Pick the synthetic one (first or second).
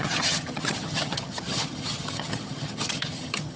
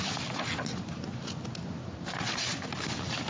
first